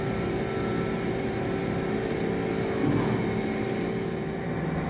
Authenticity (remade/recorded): recorded